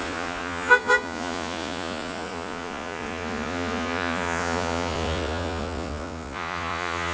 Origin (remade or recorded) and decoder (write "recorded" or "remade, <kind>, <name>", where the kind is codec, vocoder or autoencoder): remade, vocoder, Vocos